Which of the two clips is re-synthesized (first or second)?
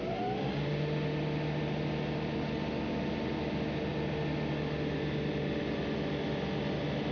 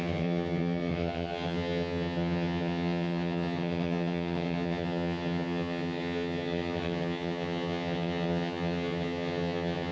second